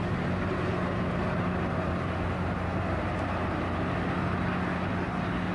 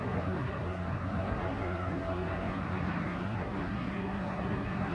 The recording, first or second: first